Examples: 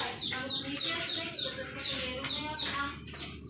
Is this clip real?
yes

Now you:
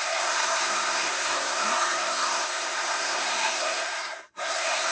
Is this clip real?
no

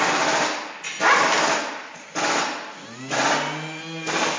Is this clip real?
yes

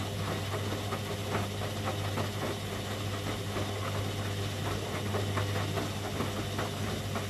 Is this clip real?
yes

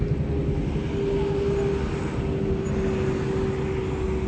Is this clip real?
yes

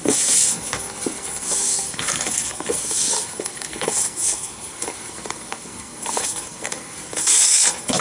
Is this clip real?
no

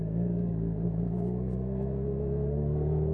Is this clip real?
no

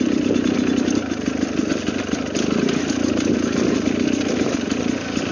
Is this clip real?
yes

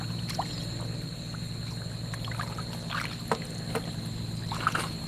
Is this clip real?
yes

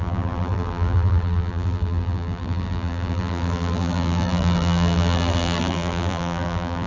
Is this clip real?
no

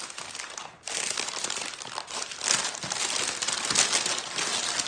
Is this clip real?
yes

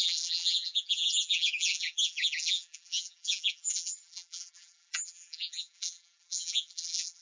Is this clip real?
no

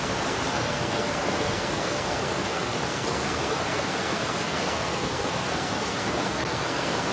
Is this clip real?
no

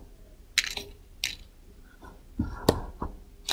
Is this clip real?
yes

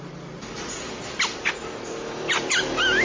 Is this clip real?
yes